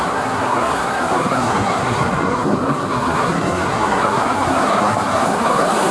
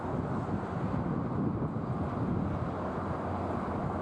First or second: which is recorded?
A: second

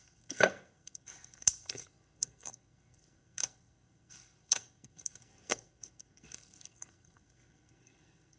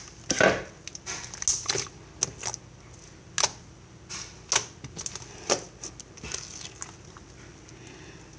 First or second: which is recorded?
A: second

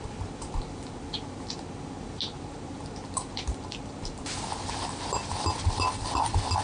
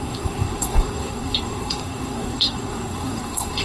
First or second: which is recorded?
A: first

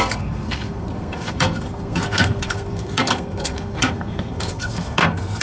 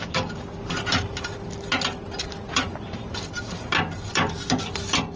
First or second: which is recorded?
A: second